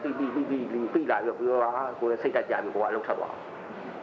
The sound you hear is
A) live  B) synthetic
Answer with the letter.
B